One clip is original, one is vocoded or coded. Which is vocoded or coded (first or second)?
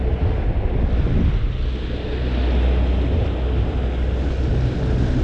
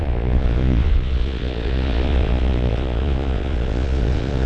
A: second